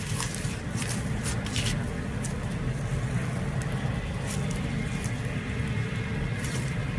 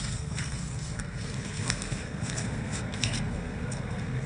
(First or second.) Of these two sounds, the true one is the first